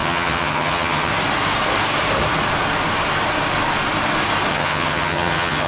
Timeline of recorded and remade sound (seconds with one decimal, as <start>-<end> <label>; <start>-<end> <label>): 0.0-1.1 remade; 1.1-4.5 recorded; 4.5-5.7 remade